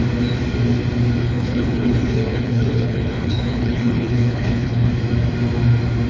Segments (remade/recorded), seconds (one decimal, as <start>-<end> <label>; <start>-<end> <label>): 0.0-1.2 recorded; 1.2-4.9 remade; 4.9-6.1 recorded